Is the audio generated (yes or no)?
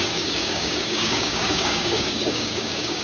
yes